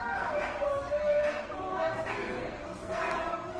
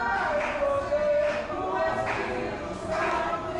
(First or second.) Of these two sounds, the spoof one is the first